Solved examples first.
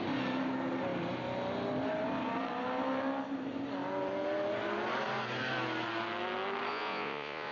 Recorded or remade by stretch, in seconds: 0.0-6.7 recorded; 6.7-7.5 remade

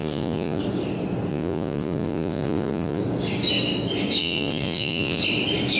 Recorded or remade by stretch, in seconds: 0.0-0.6 remade; 0.6-1.3 recorded; 1.3-3.0 remade; 3.0-4.2 recorded; 4.2-5.2 remade; 5.2-5.8 recorded